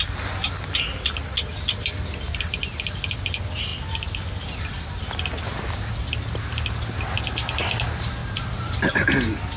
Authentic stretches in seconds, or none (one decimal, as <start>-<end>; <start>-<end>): 0.0-9.6